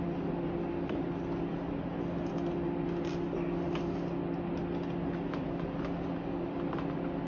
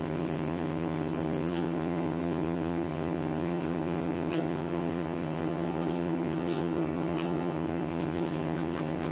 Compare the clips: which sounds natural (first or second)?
first